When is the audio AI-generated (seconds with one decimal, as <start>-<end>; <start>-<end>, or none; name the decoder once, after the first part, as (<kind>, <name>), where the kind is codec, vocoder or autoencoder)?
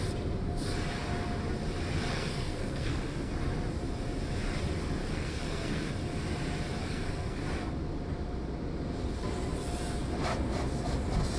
2.1-3.3 (codec, SNAC); 5.0-5.9; 6.8-7.4